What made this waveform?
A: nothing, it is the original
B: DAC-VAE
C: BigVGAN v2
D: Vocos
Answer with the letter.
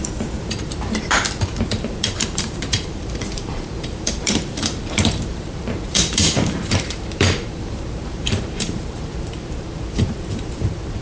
C